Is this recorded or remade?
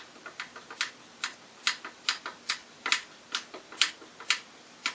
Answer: recorded